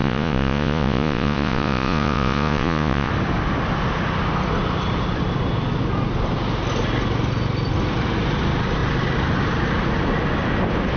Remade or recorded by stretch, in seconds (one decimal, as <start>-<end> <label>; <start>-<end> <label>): 0.0-3.1 remade; 3.1-11.0 recorded